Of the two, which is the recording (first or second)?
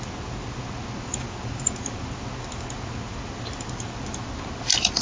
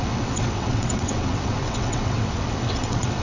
first